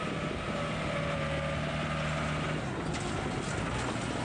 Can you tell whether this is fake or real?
real